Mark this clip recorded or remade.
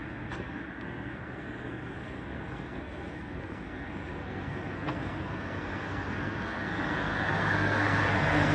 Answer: remade